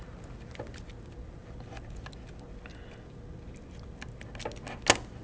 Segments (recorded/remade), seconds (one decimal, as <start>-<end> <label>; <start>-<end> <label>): 0.0-5.2 recorded